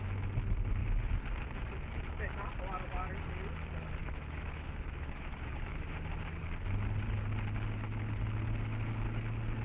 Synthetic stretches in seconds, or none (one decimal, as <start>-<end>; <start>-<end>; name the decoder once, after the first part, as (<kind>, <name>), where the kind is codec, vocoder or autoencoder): 4.0-6.4 (autoencoder, DAC-VAE)